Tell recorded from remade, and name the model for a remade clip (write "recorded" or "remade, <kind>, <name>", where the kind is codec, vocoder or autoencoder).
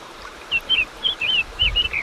remade, vocoder, BigVGAN v2